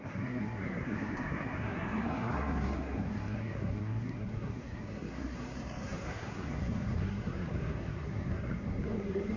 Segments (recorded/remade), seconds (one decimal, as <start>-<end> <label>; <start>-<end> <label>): 0.0-9.4 remade